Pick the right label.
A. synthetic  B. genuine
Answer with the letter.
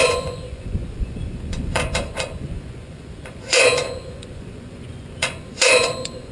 A